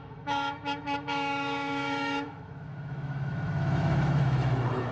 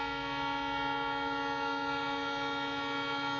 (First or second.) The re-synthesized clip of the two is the first